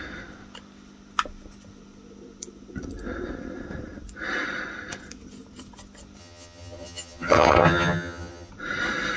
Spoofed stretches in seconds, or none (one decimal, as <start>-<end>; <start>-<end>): 6.2-8.5